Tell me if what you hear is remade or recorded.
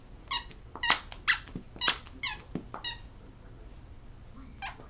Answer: recorded